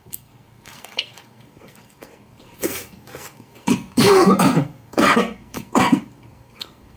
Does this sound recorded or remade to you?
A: remade